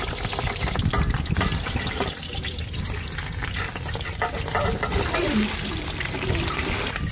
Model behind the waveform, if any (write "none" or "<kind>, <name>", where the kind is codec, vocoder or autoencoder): none